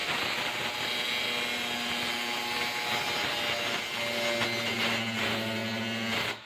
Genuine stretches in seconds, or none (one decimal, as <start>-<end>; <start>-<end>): 0.0-6.4